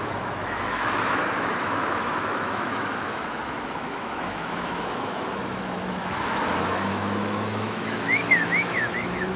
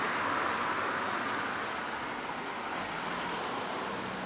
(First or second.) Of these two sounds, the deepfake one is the first